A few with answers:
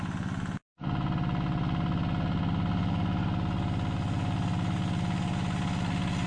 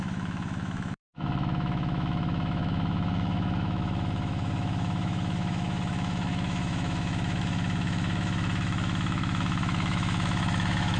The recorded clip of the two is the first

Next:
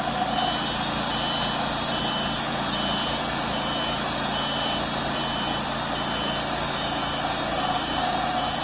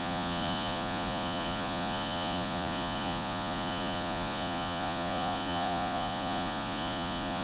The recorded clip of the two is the first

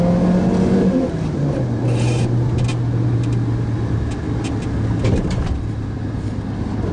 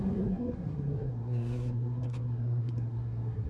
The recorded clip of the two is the first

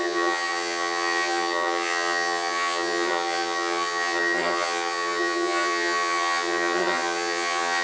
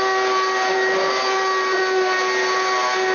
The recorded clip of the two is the second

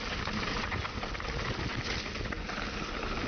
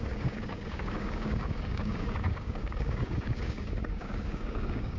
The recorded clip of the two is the first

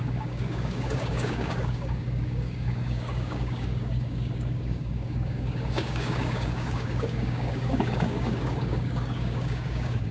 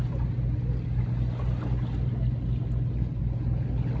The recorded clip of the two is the second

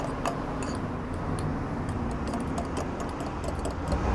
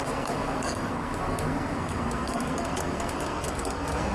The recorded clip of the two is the first